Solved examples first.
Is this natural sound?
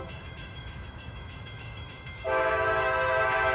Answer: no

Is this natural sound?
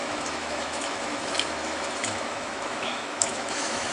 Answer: no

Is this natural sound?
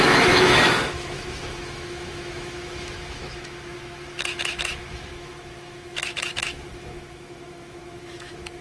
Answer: no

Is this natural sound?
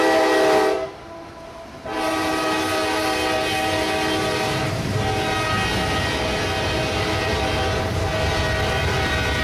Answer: yes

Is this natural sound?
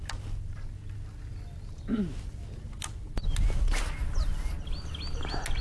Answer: yes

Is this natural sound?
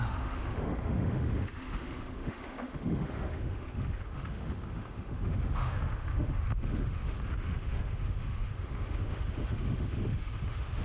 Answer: no